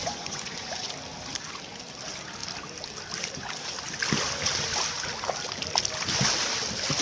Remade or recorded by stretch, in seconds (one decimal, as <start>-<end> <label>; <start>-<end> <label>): 0.0-0.7 remade; 0.7-7.0 recorded